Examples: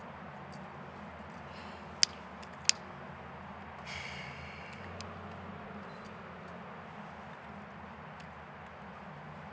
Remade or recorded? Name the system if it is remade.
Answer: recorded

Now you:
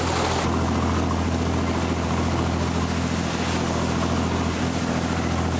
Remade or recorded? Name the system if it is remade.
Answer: recorded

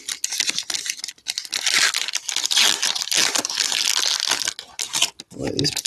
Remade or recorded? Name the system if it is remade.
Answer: recorded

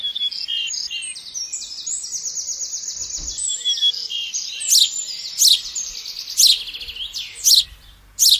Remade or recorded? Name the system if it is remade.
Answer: recorded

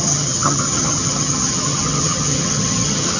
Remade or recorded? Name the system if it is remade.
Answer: remade, vocoder, HiFi-GAN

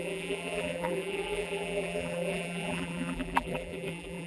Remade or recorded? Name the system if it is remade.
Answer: remade, vocoder, BigVGAN v2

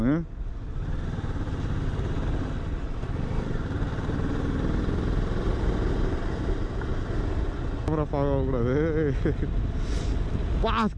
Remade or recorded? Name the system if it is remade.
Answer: recorded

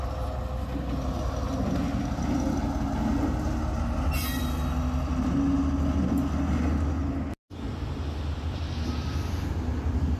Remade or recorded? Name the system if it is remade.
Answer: recorded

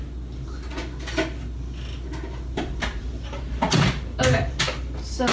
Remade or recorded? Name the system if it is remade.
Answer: recorded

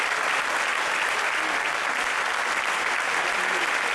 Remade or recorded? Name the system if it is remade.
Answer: recorded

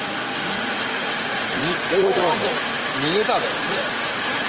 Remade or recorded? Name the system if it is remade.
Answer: remade, vocoder, Vocos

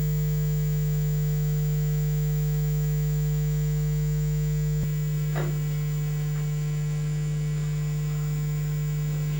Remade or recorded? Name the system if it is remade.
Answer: recorded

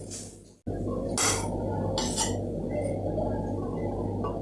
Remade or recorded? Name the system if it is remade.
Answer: recorded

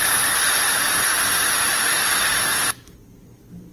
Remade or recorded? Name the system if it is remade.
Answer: recorded